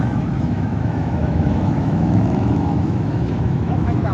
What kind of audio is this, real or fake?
fake